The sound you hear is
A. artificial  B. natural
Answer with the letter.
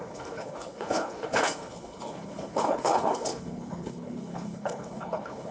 A